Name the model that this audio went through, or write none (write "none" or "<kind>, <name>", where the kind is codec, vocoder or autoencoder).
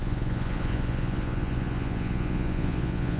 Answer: vocoder, Vocos